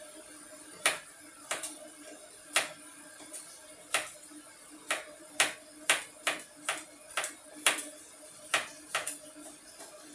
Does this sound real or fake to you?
real